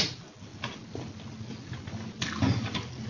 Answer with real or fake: real